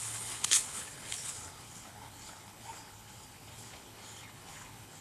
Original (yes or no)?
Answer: no